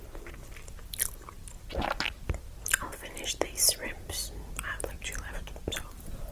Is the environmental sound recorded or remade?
remade